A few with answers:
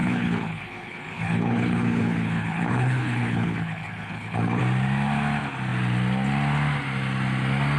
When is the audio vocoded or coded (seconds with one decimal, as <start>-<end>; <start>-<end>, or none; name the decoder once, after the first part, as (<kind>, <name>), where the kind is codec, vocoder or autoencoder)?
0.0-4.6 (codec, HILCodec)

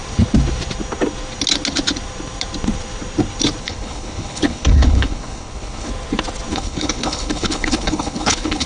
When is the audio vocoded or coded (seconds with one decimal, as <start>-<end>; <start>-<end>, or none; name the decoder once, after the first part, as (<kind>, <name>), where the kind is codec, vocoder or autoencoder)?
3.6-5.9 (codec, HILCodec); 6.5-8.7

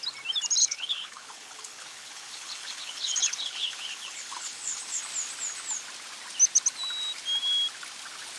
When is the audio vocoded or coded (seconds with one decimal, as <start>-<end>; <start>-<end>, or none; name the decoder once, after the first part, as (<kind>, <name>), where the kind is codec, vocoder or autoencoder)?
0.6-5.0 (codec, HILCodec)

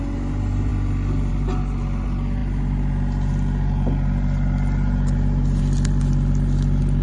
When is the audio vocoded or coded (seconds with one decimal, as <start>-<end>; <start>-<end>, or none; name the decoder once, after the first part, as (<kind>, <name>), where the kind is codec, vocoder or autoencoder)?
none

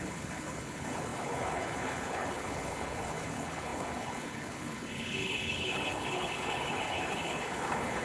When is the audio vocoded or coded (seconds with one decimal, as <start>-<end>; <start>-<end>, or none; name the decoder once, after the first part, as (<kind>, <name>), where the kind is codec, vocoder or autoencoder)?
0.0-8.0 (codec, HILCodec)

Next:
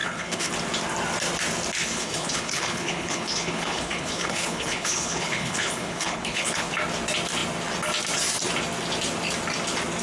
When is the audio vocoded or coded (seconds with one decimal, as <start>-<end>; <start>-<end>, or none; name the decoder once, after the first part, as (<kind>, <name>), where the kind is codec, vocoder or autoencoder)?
0.0-0.5 (codec, HILCodec); 1.8-6.7

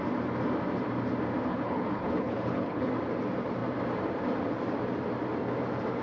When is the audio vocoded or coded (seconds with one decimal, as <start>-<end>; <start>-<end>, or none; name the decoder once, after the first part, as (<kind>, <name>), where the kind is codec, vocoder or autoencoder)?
1.5-2.9 (codec, HILCodec)

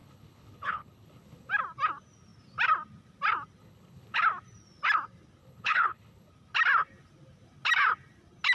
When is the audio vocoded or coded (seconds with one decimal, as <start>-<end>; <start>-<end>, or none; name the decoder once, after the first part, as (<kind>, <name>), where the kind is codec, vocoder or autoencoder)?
0.0-1.5 (codec, HILCodec); 3.6-4.2; 5.4-6.3